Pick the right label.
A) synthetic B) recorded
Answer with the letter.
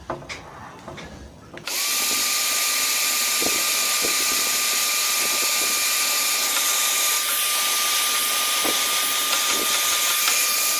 B